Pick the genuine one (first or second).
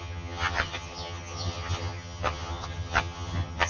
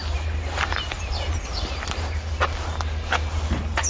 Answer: second